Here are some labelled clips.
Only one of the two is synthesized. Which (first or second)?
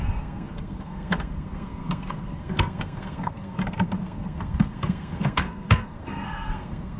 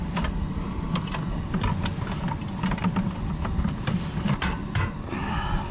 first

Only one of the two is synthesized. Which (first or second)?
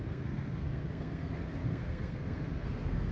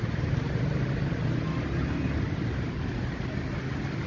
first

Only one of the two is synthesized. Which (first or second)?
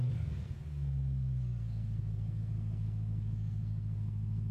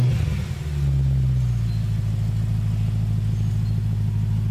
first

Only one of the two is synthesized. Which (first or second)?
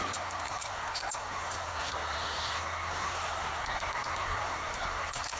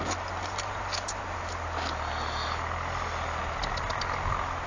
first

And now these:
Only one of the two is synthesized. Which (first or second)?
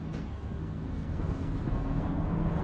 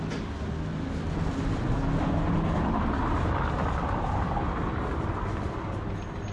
first